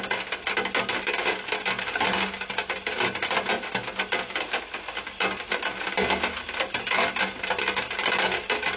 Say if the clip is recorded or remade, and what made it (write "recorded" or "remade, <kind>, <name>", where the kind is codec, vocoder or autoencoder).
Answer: recorded